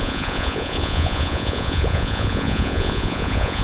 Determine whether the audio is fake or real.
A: fake